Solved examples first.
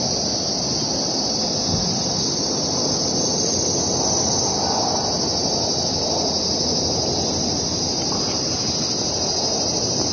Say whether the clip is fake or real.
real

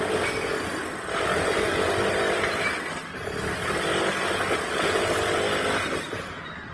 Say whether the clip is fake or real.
real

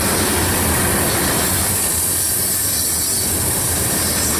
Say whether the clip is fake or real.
real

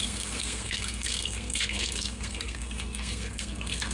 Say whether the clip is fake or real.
fake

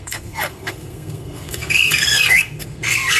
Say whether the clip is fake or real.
fake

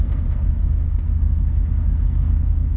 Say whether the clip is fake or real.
fake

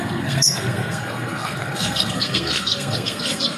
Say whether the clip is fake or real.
fake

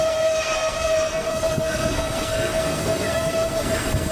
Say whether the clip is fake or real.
fake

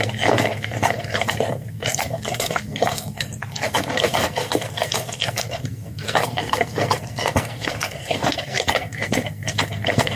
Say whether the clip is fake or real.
fake